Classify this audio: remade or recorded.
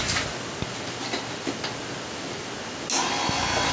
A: recorded